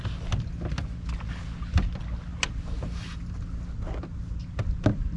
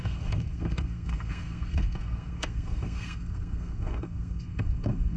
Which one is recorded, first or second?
first